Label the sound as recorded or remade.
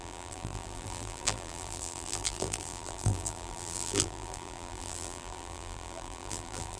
remade